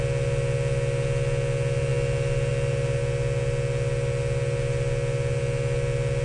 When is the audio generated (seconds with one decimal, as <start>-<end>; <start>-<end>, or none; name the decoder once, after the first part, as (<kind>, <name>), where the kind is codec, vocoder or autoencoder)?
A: none